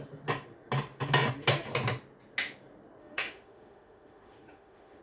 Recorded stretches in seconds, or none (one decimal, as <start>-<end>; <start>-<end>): 0.0-3.0